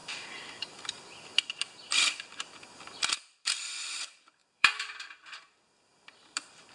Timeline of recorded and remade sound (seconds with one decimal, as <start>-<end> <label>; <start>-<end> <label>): 0.0-6.7 remade